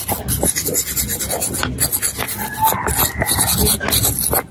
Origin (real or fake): real